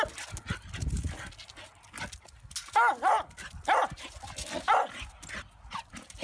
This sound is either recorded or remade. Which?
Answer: recorded